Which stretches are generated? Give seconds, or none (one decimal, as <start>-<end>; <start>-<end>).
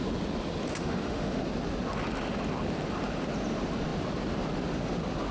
0.7-1.4